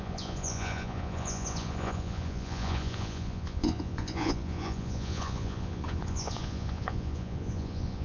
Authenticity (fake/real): fake